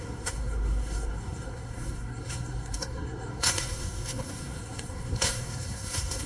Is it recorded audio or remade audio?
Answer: remade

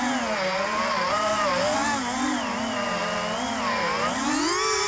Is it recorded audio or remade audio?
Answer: recorded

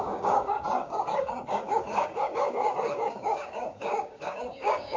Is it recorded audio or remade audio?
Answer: remade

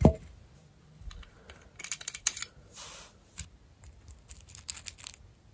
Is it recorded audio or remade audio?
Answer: recorded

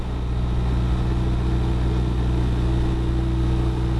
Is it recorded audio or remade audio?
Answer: recorded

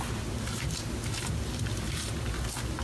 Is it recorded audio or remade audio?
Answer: recorded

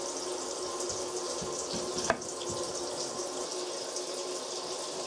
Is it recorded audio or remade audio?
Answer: recorded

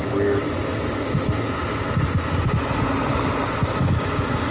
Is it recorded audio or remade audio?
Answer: recorded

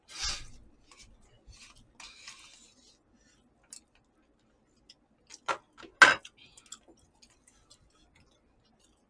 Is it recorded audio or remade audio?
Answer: recorded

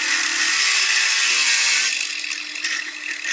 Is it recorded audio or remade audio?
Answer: recorded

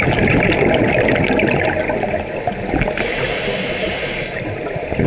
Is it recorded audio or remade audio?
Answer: recorded